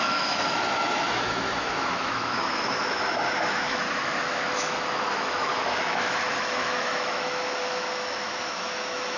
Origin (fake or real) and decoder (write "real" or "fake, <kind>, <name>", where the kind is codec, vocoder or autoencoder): fake, autoencoder, DAC-VAE